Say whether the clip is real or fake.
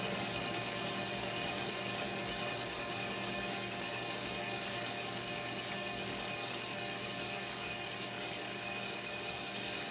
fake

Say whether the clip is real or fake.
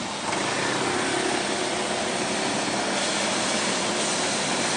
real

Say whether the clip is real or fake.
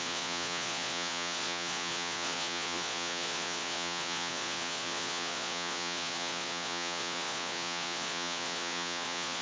fake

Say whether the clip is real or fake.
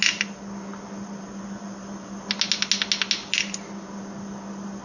real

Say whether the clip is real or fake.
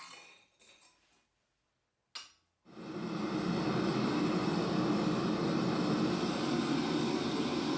real